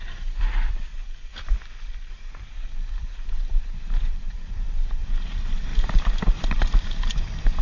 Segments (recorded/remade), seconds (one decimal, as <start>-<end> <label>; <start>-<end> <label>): 0.0-0.9 remade; 0.9-2.1 recorded; 2.1-7.6 remade